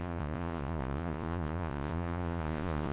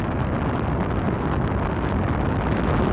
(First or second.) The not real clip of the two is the first